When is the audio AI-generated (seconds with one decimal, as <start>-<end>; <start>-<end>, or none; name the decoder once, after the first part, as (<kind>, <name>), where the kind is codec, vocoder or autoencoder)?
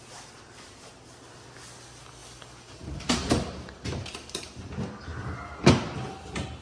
2.2-4.6 (vocoder, BigVGAN v2)